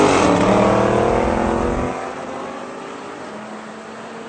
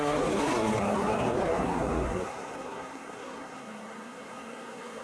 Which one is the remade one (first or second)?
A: second